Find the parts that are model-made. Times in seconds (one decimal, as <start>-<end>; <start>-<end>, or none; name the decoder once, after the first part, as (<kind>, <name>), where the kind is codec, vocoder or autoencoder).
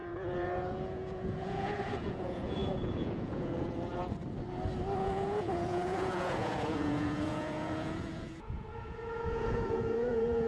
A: 0.0-4.2 (vocoder, Vocos); 5.0-10.5